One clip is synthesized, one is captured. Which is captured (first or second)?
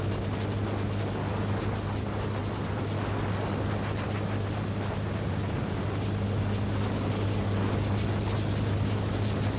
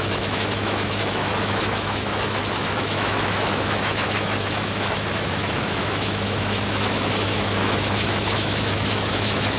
first